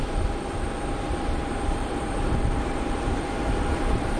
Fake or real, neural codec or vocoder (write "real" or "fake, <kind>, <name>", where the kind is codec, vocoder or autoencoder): fake, vocoder, BigVGAN v2